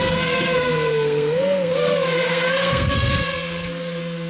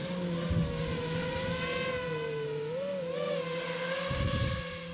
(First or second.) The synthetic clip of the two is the first